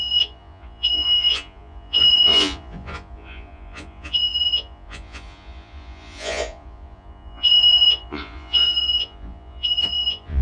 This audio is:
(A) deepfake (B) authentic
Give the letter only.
A